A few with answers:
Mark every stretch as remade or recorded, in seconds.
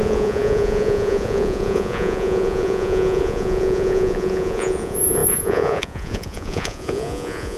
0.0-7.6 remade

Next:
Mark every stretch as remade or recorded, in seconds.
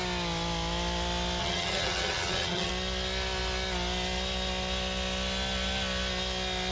0.0-1.4 recorded; 1.4-2.7 remade; 2.7-6.7 recorded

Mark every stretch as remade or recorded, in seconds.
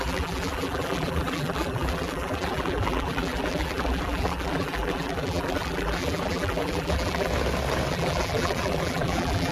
0.0-7.3 remade; 7.3-7.9 recorded; 7.9-9.5 remade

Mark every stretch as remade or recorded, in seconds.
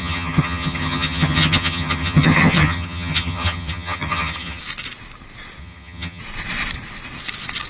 0.0-4.6 remade; 4.6-5.6 recorded; 5.6-6.2 remade; 6.2-7.7 recorded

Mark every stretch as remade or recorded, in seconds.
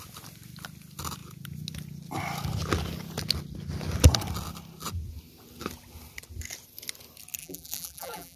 0.0-7.4 recorded; 7.4-8.4 remade